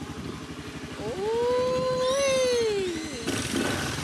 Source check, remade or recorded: recorded